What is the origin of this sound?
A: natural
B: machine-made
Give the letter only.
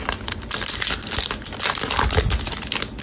A